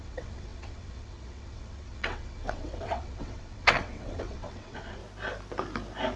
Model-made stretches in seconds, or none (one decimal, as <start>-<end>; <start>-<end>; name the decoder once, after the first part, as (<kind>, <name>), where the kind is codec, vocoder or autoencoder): 0.0-5.0 (vocoder, WaveNeXt)